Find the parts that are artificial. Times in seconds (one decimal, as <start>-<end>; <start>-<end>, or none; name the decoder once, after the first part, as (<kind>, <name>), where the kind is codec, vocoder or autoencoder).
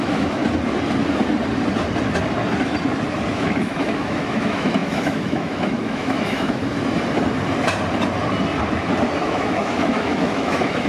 0.0-0.4 (autoencoder, DAC-VAE); 3.3-6.6; 9.2-10.9